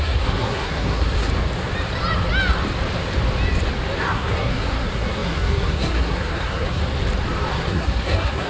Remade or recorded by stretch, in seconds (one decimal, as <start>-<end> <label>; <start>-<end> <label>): 0.0-1.3 remade; 1.3-4.0 recorded; 4.0-6.8 remade; 6.8-7.5 recorded; 7.5-8.5 remade